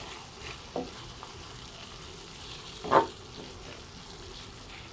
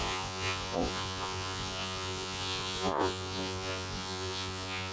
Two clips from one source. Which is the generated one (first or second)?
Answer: second